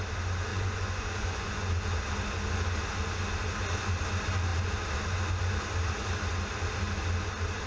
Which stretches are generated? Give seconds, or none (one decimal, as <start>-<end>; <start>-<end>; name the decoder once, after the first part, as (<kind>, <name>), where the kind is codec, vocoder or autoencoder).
0.5-1.7 (vocoder, Vocos)